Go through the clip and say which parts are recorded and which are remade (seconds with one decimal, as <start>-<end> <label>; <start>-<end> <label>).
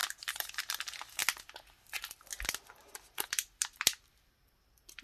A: 0.0-5.0 recorded